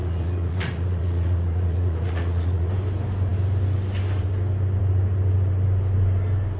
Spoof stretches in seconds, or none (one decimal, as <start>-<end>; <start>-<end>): 0.0-2.7